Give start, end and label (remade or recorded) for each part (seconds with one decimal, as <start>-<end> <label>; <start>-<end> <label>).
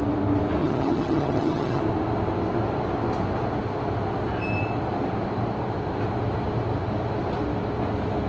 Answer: 0.0-0.6 recorded; 0.6-1.8 remade; 1.8-8.3 recorded